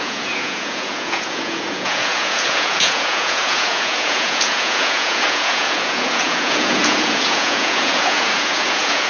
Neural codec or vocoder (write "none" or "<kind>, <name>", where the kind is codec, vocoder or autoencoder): vocoder, Vocos